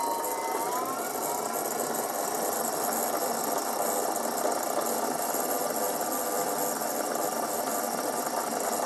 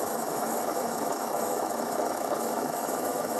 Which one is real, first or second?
first